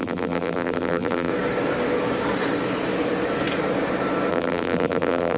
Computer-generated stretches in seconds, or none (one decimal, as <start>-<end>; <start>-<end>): 0.0-1.3; 4.3-5.4